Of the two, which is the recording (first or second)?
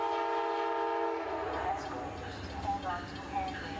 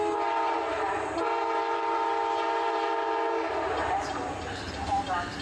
first